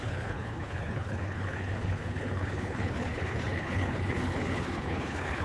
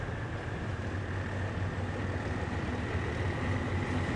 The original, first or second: second